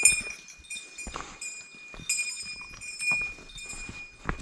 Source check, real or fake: real